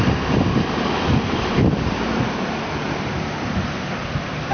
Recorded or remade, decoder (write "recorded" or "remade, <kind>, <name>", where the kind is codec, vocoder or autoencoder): recorded